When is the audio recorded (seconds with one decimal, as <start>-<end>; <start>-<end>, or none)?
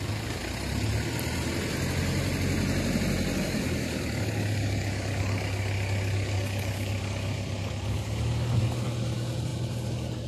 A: 0.4-3.4